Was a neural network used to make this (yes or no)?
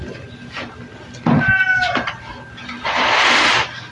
no